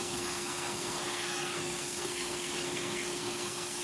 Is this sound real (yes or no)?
no